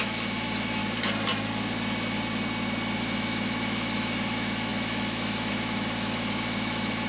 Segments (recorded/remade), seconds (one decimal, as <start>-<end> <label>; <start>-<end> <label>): 0.0-0.8 remade; 0.8-3.0 recorded; 3.0-7.1 remade